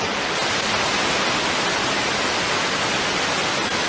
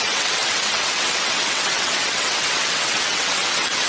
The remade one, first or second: second